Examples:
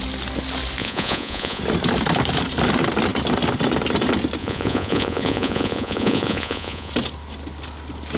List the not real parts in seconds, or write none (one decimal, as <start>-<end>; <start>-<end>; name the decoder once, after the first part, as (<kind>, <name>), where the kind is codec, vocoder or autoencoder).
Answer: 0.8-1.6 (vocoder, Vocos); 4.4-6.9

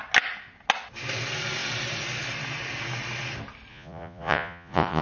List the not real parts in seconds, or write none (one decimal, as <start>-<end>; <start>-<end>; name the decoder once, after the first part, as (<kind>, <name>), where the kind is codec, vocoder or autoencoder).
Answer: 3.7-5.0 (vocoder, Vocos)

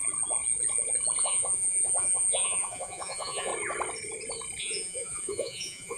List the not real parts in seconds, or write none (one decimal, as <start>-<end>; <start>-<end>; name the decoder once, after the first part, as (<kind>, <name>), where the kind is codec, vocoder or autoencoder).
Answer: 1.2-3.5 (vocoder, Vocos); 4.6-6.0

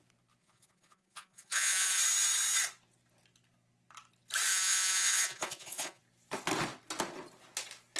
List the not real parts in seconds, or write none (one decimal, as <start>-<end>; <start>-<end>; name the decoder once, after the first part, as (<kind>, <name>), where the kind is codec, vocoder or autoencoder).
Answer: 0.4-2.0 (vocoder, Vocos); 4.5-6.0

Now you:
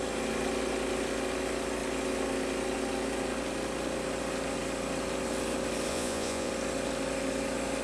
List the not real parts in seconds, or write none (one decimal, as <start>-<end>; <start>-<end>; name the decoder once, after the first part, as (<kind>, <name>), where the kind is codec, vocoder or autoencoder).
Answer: 5.9-6.5 (vocoder, Vocos)

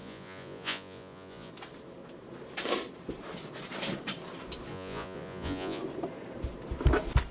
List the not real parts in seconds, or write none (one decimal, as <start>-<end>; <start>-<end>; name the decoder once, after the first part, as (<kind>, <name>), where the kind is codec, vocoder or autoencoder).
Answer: 0.0-1.5 (vocoder, Vocos); 4.7-5.8